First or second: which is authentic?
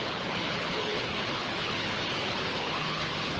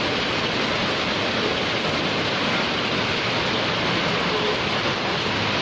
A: second